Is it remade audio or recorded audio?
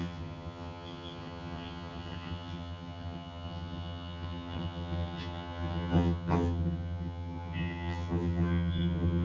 remade